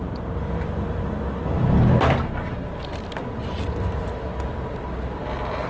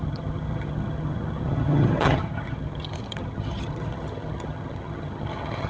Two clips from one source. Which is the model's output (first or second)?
second